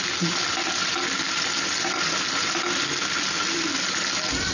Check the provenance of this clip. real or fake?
real